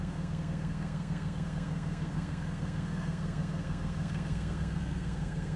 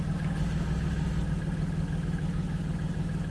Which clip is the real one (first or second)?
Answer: second